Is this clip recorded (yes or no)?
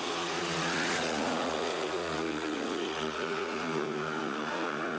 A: no